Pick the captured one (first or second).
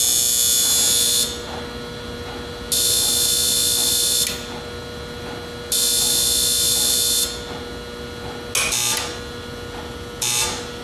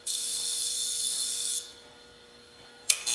first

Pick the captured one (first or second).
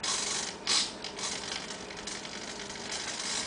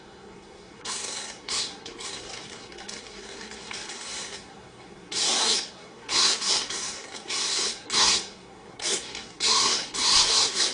first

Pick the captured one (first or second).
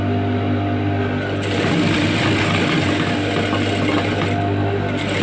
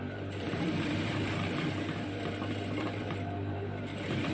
first